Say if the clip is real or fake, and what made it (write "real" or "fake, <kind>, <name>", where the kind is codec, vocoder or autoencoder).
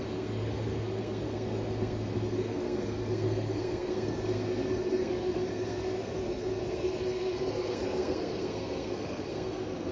fake, codec, SNAC